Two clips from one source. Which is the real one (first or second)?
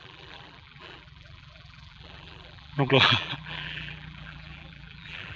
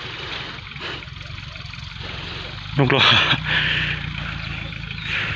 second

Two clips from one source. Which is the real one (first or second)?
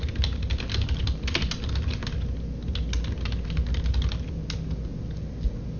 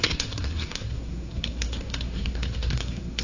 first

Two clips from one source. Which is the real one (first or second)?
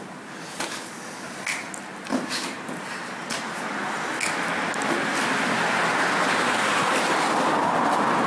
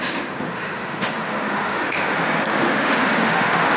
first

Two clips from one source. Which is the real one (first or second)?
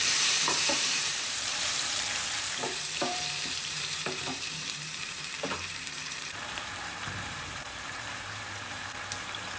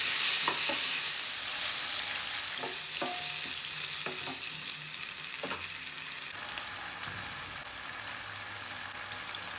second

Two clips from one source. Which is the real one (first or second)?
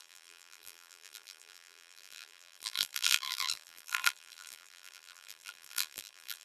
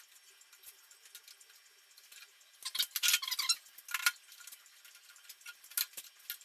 second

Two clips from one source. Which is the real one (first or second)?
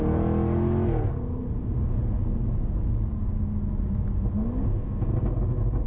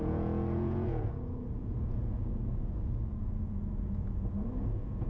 first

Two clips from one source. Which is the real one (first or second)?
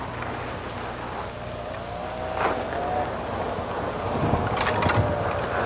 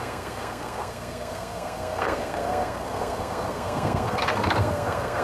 first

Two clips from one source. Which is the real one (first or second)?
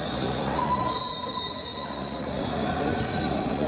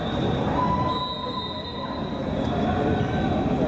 second